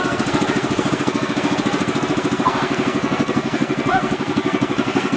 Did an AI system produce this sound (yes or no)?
yes